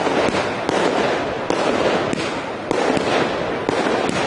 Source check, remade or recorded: recorded